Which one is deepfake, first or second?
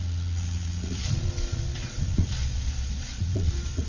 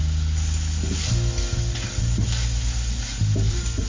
first